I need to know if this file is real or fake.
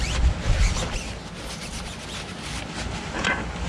real